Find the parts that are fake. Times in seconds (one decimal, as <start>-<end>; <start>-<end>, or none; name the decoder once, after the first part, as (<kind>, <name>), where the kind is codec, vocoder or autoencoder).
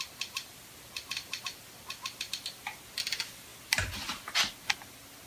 none